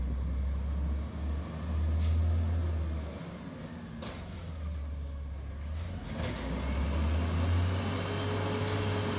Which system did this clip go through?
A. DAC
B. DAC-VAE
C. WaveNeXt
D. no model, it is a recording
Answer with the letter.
D